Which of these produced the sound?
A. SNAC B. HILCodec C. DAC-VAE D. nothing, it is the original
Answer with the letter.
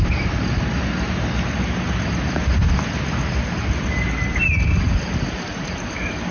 D